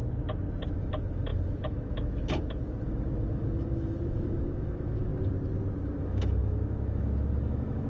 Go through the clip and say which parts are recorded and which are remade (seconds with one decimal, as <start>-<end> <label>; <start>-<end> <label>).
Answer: 0.0-0.7 recorded; 0.7-5.1 remade; 5.1-6.0 recorded; 6.0-7.9 remade